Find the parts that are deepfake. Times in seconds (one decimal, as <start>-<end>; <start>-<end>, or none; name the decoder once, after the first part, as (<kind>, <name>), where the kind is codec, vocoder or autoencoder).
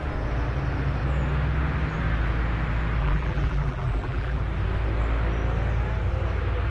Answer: 3.0-4.4 (vocoder, BigVGAN v2)